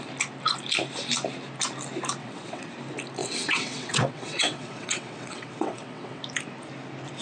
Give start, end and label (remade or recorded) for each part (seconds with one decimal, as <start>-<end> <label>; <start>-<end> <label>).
0.0-2.2 recorded; 2.2-2.7 remade; 2.7-3.2 recorded; 3.2-6.2 remade; 6.2-7.2 recorded